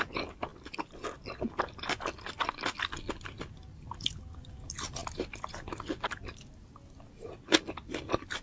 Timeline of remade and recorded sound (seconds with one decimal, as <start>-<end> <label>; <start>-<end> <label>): 0.0-8.4 recorded